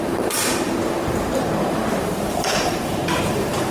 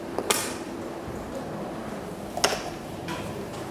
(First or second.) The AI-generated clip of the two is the first